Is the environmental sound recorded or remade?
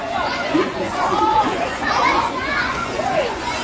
remade